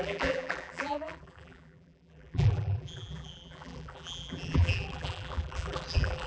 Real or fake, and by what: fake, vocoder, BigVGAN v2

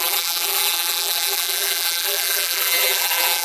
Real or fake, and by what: fake, vocoder, BigVGAN v2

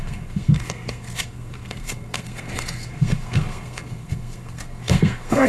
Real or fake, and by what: fake, codec, SNAC